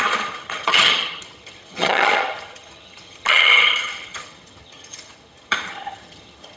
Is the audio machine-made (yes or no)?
yes